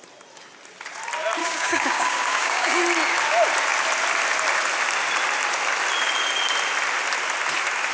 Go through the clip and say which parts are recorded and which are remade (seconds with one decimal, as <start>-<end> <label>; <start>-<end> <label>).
0.0-1.4 recorded; 1.4-2.8 remade; 2.8-7.9 recorded